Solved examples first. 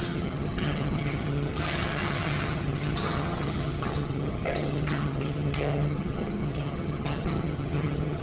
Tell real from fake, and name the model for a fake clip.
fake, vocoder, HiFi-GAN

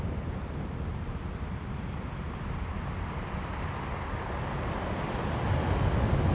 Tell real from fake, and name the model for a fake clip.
real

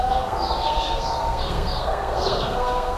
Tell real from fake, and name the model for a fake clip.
fake, codec, SNAC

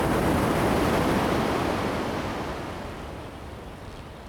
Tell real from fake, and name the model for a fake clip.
real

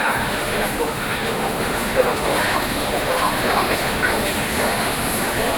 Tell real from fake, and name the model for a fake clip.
fake, autoencoder, DAC-VAE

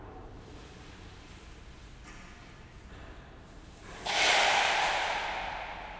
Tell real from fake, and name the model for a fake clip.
real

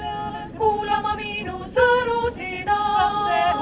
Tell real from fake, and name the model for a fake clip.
real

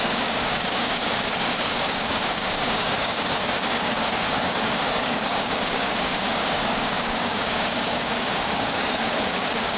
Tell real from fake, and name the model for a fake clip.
fake, codec, DAC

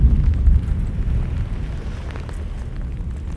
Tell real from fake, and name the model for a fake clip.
real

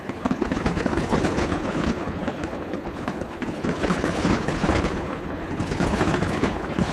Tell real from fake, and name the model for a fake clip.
fake, codec, HILCodec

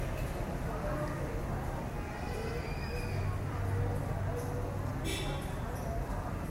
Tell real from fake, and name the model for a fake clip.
real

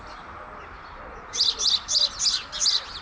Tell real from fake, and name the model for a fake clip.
real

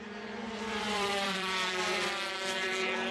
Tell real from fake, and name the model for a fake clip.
fake, vocoder, BigVGAN v2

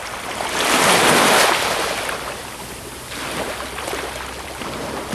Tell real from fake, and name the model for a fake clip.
real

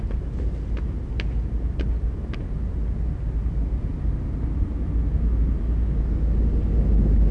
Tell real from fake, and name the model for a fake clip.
real